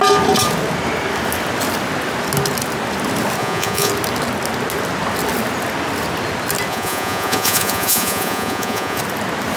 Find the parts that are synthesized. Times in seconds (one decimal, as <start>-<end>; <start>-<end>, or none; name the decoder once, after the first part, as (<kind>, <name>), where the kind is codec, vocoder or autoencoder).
3.4-3.9 (vocoder, Vocos); 6.7-9.0